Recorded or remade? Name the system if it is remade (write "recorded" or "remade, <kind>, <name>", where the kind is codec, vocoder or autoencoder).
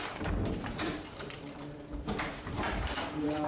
remade, vocoder, BigVGAN v2